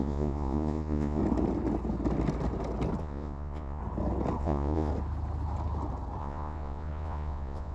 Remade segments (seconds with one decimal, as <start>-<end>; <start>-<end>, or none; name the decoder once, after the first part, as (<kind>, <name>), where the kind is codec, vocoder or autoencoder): 0.0-1.2 (vocoder, Vocos); 3.0-3.8; 4.4-4.9; 6.2-7.7